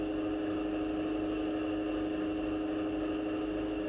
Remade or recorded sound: recorded